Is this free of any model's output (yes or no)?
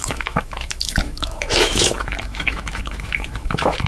no